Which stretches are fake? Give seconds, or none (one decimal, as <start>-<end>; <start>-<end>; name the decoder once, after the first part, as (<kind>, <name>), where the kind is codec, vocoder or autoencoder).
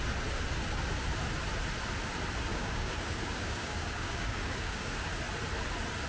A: 2.5-5.1 (codec, DAC)